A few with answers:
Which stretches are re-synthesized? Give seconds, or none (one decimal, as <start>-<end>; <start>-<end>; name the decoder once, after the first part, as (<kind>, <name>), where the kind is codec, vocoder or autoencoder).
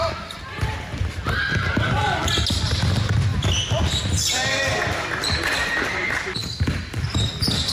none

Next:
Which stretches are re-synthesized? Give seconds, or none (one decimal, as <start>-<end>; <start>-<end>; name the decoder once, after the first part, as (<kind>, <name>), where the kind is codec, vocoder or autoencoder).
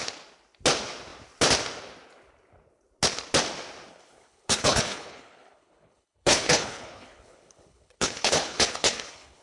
3.9-9.4 (codec, HILCodec)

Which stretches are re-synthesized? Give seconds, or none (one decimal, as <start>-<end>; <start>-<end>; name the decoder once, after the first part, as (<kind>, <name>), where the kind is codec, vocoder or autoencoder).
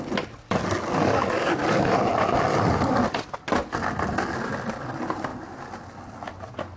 0.0-2.1 (vocoder, BigVGAN v2); 4.8-5.3